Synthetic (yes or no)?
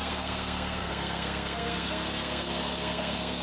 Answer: yes